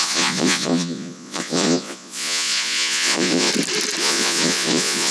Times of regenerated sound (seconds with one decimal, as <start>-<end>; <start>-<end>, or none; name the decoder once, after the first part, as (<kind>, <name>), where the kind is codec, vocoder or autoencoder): 0.0-3.5 (vocoder, Vocos); 4.0-5.1